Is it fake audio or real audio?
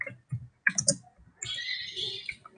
real